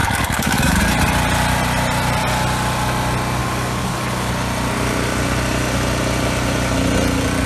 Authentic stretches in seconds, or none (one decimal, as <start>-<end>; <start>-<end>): 0.8-3.4; 4.3-7.5